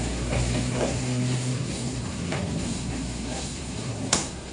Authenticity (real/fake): fake